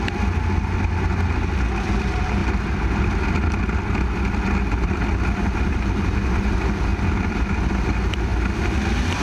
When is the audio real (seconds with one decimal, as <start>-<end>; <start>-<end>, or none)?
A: 0.0-9.2